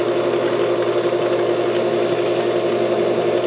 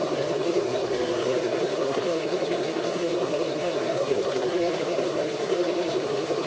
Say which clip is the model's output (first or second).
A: second